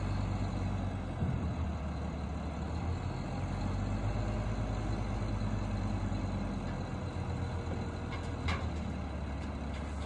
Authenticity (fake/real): real